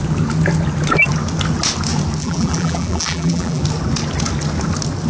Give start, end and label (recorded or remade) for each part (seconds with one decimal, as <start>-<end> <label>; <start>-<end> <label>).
0.0-2.2 recorded; 2.2-3.6 remade; 3.6-5.1 recorded